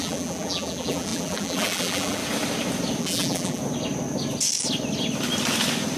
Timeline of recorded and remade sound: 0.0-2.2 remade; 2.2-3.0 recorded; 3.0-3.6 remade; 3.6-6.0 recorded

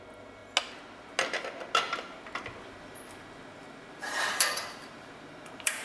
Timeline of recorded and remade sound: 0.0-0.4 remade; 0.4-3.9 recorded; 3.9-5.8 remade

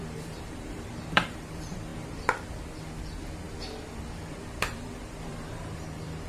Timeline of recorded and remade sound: 0.0-1.9 remade; 1.9-3.9 recorded; 3.9-6.3 remade

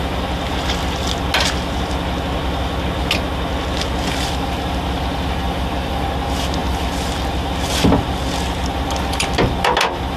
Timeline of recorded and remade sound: 0.0-10.2 recorded